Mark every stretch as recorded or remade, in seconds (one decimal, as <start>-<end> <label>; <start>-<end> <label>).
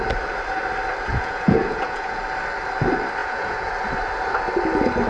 0.0-1.1 recorded; 1.1-2.2 remade; 2.2-3.2 recorded; 3.2-3.7 remade; 3.7-5.1 recorded